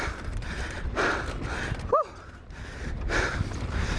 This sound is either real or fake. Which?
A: real